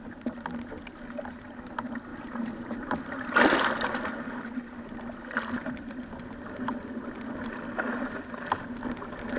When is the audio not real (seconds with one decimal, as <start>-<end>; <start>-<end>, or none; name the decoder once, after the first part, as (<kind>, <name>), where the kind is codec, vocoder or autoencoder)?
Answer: 2.1-3.6 (vocoder, BigVGAN v2)